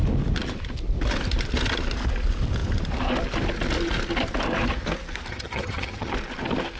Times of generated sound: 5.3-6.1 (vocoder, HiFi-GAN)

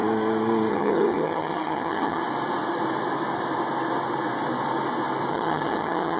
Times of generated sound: 0.7-2.2 (vocoder, HiFi-GAN); 5.3-6.2

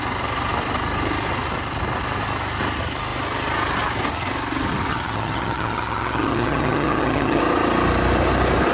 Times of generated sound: 4.9-7.4 (vocoder, HiFi-GAN)

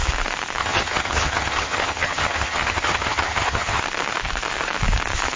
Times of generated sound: 0.6-3.8 (vocoder, HiFi-GAN)